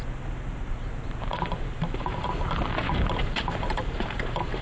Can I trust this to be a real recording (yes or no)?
no